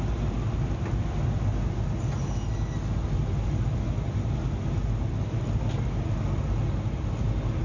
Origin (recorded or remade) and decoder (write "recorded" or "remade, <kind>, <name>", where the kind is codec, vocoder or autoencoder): recorded